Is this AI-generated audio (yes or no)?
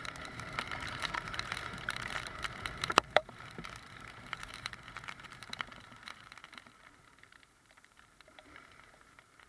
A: yes